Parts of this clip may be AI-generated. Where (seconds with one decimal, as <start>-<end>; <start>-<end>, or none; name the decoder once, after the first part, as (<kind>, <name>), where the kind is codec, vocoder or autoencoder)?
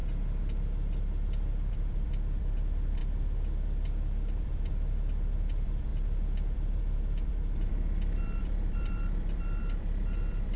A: 1.7-3.0 (vocoder, BigVGAN v2); 4.4-10.6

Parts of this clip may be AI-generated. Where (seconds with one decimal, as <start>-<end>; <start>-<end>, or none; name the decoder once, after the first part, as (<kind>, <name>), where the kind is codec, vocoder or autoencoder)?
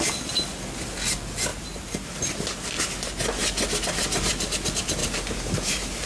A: 1.5-2.2 (vocoder, BigVGAN v2); 5.0-6.1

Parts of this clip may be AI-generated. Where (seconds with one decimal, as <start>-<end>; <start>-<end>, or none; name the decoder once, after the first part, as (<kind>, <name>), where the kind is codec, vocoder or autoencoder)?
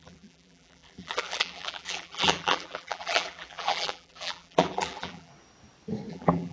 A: 0.0-5.3 (vocoder, BigVGAN v2); 6.1-6.5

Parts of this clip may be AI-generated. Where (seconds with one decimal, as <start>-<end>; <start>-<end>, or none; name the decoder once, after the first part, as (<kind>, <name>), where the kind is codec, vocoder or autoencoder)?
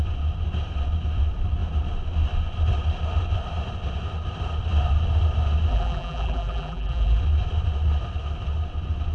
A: 5.7-7.2 (vocoder, BigVGAN v2)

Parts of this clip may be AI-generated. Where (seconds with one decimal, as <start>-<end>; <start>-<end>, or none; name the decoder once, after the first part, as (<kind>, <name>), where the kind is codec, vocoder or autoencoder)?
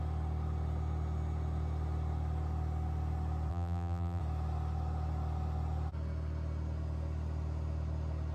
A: 3.5-4.2 (vocoder, BigVGAN v2)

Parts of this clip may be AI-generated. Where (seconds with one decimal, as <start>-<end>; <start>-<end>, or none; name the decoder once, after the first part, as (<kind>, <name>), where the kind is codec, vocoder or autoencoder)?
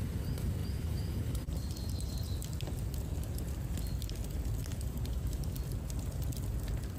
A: 0.6-2.3 (vocoder, BigVGAN v2); 4.7-5.5